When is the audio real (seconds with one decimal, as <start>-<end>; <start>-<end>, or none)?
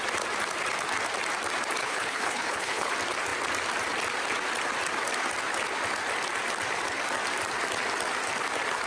0.0-1.8; 2.9-8.9